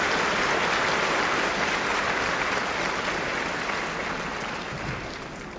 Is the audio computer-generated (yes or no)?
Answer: no